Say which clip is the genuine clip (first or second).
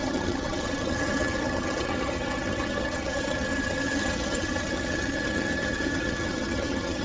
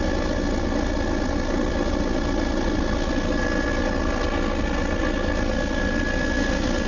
second